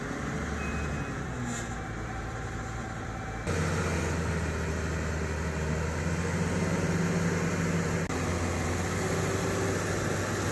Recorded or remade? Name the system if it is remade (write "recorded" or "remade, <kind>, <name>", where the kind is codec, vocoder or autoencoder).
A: recorded